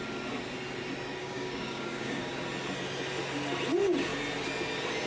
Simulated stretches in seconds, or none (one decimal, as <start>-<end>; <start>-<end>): 1.2-2.3